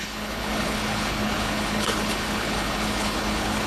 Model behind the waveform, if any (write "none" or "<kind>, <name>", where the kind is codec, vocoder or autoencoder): codec, HILCodec